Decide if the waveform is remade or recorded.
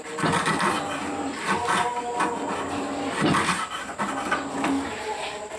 recorded